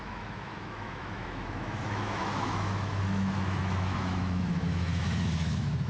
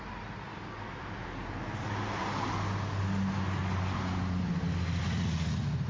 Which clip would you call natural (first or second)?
second